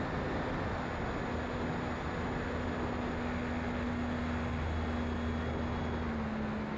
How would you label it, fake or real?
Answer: real